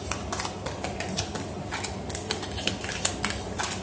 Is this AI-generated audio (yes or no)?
no